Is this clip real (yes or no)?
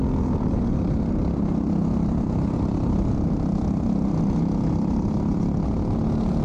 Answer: yes